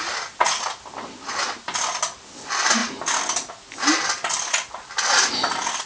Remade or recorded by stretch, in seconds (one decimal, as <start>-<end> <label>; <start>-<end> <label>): 0.0-5.8 recorded